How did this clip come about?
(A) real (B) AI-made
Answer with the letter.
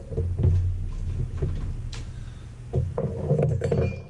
A